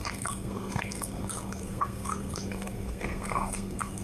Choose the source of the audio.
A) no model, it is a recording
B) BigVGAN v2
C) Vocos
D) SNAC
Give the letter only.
D